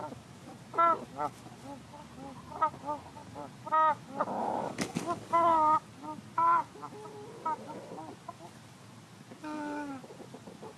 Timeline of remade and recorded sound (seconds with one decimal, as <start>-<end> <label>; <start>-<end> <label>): 0.0-4.4 recorded; 4.4-5.8 remade; 5.8-9.4 recorded; 9.4-9.9 remade; 9.9-10.8 recorded